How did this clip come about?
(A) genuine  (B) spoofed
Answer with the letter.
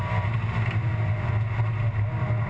A